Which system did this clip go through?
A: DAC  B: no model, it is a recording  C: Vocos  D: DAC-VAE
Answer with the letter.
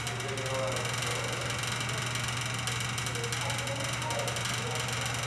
B